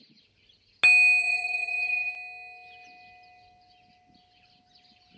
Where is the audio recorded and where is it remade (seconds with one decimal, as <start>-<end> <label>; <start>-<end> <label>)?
0.0-1.2 recorded; 1.2-2.1 remade; 2.1-5.2 recorded